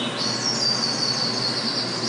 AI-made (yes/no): no